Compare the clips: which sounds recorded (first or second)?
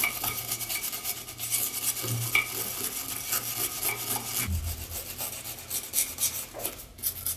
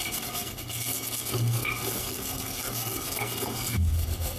first